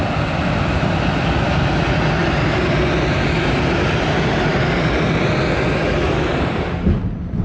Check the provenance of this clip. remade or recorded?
recorded